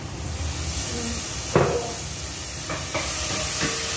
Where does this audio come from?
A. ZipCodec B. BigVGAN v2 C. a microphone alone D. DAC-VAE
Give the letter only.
C